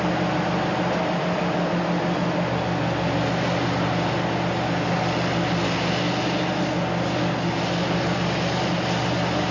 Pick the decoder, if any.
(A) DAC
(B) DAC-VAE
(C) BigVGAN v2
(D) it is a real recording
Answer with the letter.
D